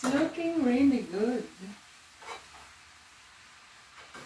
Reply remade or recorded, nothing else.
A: recorded